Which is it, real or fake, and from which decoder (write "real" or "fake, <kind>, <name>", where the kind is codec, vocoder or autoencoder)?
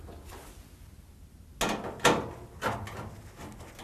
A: real